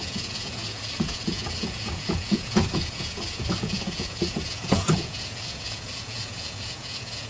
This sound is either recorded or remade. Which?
remade